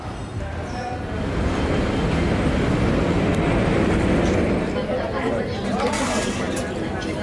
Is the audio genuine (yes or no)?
yes